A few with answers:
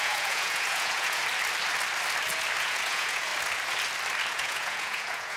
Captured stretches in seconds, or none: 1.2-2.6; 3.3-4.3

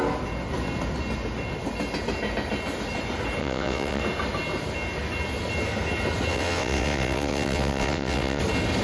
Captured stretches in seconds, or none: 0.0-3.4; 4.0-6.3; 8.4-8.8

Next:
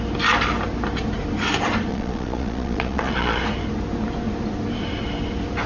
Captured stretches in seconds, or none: 0.0-1.9; 3.4-5.7